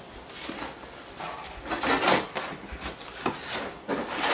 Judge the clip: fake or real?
real